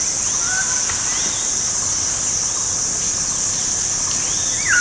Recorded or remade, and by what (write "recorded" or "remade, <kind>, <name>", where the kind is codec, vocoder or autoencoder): recorded